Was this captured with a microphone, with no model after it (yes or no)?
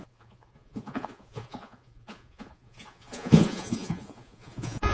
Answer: no